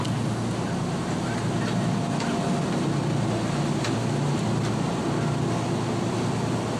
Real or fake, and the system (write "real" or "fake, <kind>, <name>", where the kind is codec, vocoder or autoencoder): real